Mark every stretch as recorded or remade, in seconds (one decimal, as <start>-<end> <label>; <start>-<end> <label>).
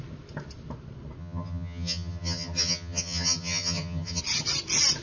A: 0.0-1.2 recorded; 1.2-4.2 remade; 4.2-5.0 recorded